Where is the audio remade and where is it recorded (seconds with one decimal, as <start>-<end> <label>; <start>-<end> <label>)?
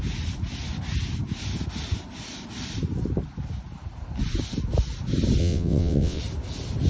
0.0-5.4 recorded; 5.4-6.2 remade; 6.2-6.9 recorded